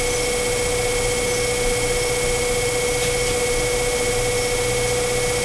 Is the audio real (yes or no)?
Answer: yes